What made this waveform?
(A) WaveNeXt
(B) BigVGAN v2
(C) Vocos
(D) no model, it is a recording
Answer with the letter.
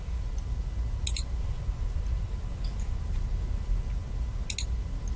D